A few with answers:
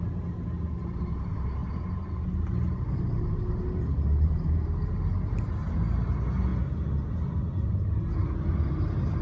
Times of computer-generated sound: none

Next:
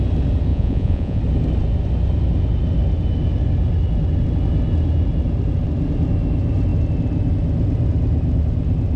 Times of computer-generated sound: 0.5-1.2 (vocoder, Vocos)

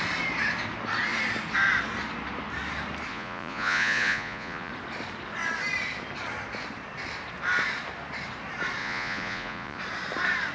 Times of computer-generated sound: 3.1-4.7 (vocoder, Vocos); 8.8-9.8

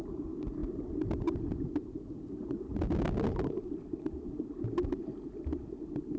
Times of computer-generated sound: none